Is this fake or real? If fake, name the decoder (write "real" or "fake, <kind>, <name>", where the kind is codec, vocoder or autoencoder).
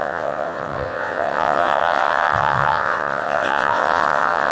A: fake, vocoder, WaveNeXt